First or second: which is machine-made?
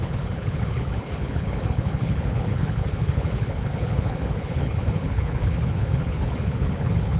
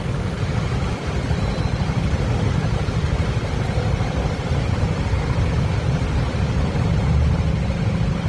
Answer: first